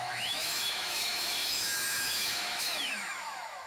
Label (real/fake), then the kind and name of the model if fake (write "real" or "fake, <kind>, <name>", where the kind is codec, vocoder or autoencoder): fake, autoencoder, DAC-VAE